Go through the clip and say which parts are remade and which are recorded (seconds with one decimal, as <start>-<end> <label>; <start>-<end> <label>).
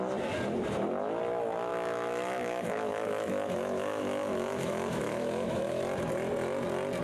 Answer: 0.0-1.7 recorded; 1.7-5.8 remade; 5.8-7.0 recorded